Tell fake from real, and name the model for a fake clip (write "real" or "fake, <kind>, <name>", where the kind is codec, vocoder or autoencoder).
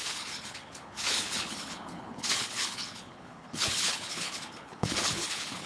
fake, codec, HILCodec